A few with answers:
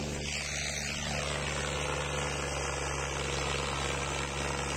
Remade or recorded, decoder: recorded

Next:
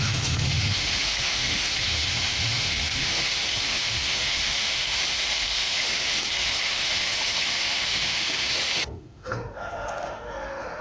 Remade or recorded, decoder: remade, autoencoder, DAC-VAE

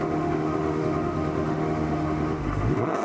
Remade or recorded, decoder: remade, autoencoder, DAC-VAE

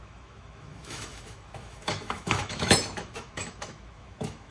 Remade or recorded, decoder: remade, autoencoder, DAC-VAE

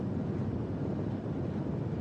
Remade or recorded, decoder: recorded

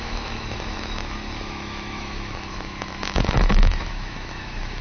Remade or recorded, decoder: remade, autoencoder, DAC-VAE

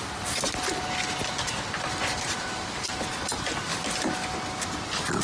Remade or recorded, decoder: recorded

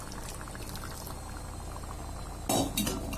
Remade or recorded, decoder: recorded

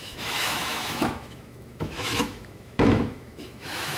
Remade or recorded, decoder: remade, autoencoder, DAC-VAE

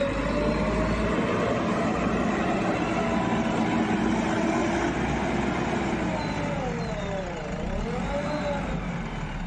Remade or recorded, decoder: recorded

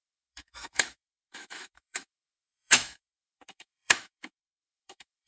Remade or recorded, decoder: remade, autoencoder, DAC-VAE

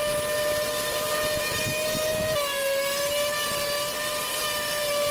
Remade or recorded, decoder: recorded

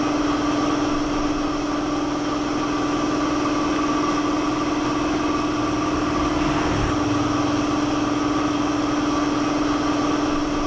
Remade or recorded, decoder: recorded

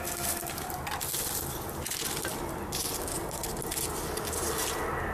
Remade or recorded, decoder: recorded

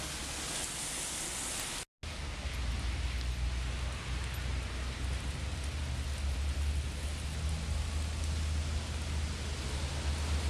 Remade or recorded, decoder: recorded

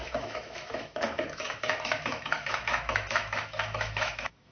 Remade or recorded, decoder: remade, autoencoder, DAC-VAE